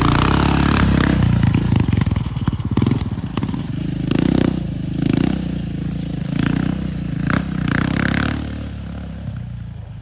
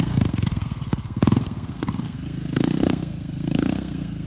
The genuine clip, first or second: first